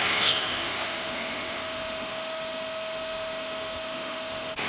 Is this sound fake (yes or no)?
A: yes